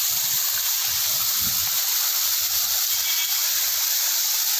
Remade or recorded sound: recorded